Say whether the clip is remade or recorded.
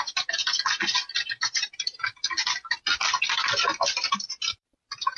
remade